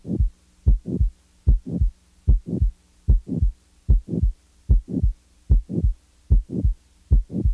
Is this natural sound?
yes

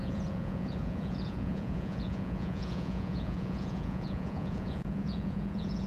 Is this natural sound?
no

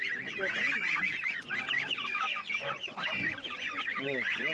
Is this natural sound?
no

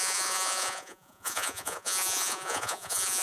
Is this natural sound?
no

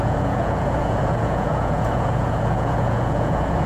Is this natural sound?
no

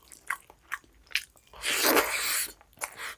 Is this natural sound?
yes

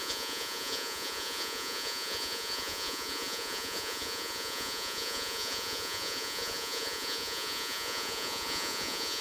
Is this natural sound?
no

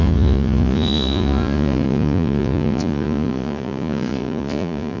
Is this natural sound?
no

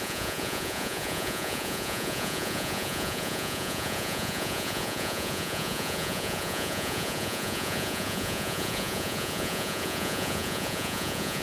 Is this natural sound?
no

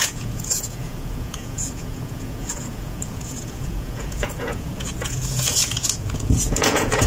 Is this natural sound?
no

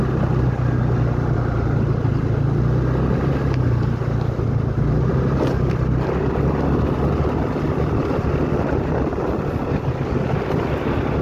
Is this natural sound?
yes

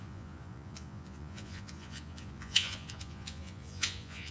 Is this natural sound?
no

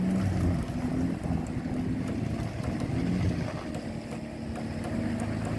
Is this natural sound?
yes